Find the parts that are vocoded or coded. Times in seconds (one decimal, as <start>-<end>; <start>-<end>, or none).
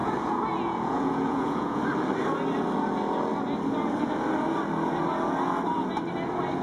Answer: 0.0-1.8